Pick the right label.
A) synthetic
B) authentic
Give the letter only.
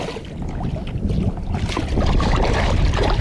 B